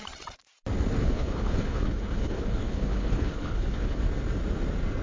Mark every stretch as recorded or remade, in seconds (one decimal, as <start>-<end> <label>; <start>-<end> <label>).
0.0-1.0 recorded; 1.0-4.0 remade; 4.0-5.0 recorded